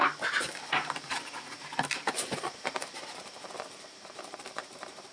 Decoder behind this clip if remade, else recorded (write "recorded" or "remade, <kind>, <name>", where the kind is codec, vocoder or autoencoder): remade, vocoder, BigVGAN v2